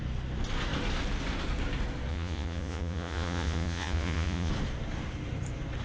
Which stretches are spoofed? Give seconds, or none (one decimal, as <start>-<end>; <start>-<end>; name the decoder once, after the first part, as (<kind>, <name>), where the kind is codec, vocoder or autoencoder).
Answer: 2.1-4.5 (vocoder, Vocos)